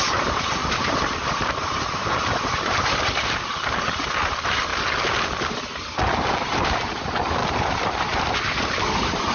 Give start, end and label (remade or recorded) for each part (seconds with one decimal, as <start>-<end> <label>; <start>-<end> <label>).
0.0-4.7 remade; 4.7-6.3 recorded; 6.3-9.3 remade